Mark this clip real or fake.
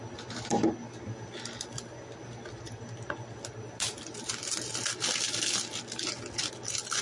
real